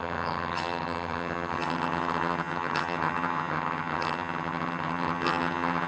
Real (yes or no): no